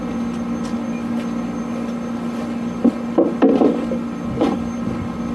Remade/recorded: recorded